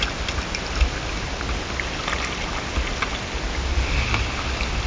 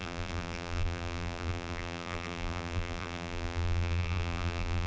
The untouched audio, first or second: first